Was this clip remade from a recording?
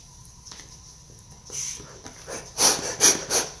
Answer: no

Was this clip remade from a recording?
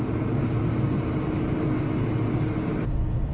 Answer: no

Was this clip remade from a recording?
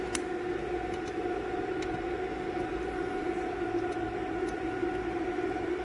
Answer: no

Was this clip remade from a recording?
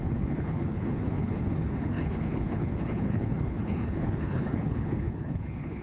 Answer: yes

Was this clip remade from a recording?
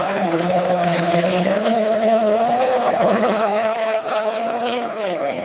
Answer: yes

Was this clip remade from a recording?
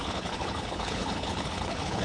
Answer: yes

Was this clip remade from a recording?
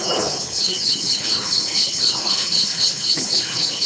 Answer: yes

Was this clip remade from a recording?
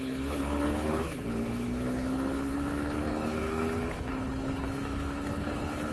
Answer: yes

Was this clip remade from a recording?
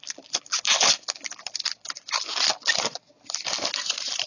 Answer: no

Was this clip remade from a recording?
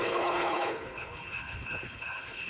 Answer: yes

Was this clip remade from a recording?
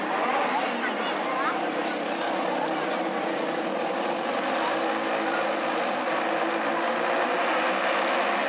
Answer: no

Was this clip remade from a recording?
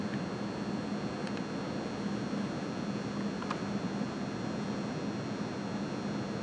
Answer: no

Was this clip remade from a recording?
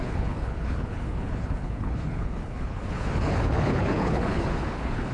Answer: yes